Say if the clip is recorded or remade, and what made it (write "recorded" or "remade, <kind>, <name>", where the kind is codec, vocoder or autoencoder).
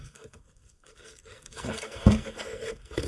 remade, codec, SNAC